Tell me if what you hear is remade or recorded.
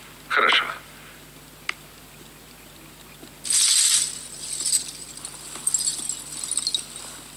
recorded